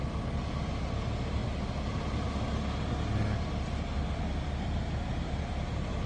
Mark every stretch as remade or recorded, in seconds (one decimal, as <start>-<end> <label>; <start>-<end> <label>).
0.0-6.1 recorded